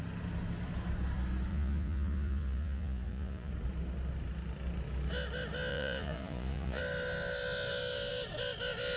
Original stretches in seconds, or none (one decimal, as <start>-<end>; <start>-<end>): 0.0-1.5; 3.5-5.7; 6.8-9.0